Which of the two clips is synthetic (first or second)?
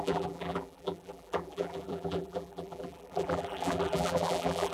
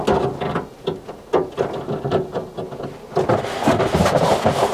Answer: first